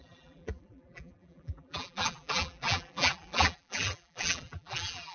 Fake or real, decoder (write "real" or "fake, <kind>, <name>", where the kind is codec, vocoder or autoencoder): fake, vocoder, BigVGAN v2